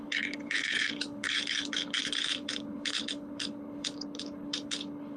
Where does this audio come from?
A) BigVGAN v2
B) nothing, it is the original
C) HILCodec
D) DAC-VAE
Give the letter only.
C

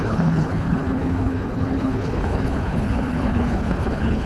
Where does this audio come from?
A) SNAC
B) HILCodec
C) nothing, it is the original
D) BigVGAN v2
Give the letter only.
B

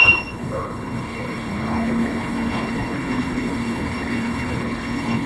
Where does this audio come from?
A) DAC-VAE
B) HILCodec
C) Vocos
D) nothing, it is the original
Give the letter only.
B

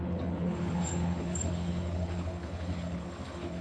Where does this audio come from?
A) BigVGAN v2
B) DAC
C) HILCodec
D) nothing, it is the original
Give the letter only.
C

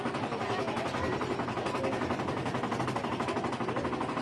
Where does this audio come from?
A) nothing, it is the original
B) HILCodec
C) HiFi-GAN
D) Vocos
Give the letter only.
A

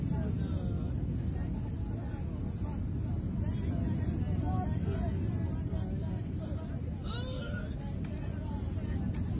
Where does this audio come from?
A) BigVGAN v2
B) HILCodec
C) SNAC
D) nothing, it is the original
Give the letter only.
D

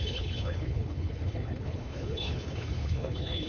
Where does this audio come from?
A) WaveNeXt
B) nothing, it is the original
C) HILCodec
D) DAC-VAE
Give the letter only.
C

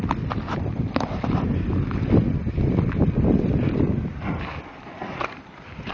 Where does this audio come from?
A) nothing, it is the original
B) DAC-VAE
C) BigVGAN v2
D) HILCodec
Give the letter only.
A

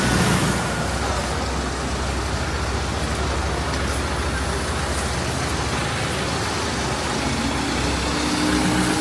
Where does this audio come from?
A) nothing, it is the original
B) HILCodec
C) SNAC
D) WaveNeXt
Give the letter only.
A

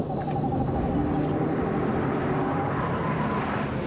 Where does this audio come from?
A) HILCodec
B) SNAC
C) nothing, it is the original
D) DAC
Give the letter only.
C